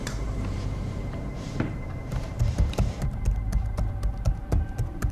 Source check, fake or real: fake